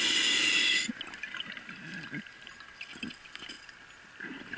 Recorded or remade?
recorded